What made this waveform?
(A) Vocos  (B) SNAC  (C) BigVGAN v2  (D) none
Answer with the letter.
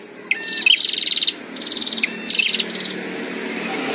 D